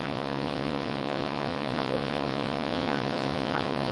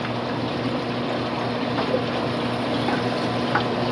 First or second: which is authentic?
second